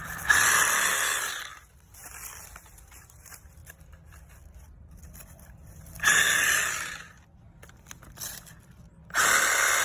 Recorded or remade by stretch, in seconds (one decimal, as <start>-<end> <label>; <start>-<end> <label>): 0.0-9.8 recorded